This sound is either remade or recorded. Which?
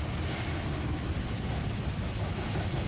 recorded